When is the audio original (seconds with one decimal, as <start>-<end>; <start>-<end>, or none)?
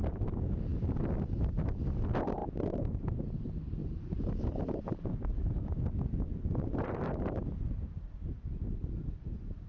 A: 0.0-2.4; 3.1-3.8; 8.0-9.7